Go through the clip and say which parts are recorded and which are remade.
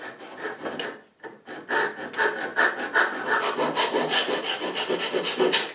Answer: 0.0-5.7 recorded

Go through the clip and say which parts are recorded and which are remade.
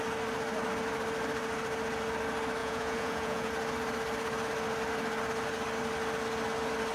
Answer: 0.0-2.6 recorded; 2.6-3.5 remade; 3.5-6.9 recorded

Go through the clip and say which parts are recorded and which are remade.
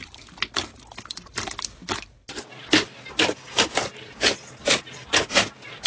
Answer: 0.0-5.9 recorded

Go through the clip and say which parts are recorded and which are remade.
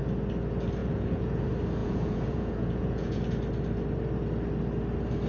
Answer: 0.0-0.8 recorded; 0.8-1.4 remade; 1.4-1.8 recorded; 1.8-3.2 remade; 3.2-5.3 recorded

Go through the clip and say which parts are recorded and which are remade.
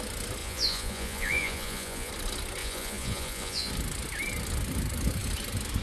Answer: 0.0-0.4 recorded; 0.4-2.1 remade; 2.1-2.6 recorded; 2.6-3.7 remade; 3.7-5.8 recorded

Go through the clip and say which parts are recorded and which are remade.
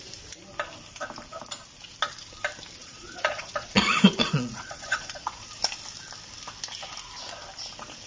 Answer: 0.0-2.8 recorded; 2.8-5.4 remade; 5.4-8.1 recorded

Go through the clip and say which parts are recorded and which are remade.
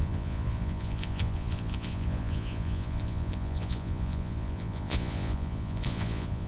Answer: 0.0-6.5 remade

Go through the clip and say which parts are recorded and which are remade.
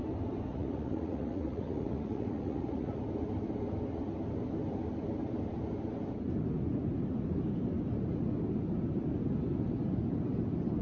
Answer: 0.0-0.5 recorded; 0.5-3.0 remade; 3.0-10.8 recorded